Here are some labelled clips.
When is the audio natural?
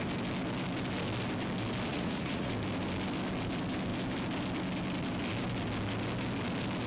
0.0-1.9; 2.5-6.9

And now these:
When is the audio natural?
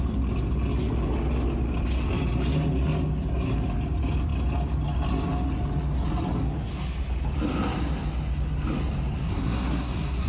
0.0-9.2